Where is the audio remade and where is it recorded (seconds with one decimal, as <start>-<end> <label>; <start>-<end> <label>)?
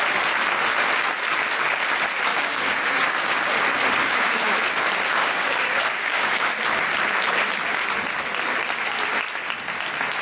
0.0-2.3 recorded; 2.3-3.4 remade; 3.4-4.0 recorded; 4.0-4.8 remade; 4.8-5.2 recorded; 5.2-6.5 remade; 6.5-10.2 recorded